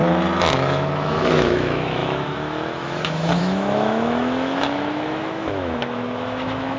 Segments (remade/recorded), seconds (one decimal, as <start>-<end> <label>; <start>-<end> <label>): 0.0-0.5 recorded; 0.5-6.8 remade